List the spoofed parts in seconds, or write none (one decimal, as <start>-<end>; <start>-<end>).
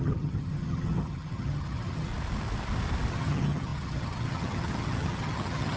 0.0-2.1; 3.1-5.8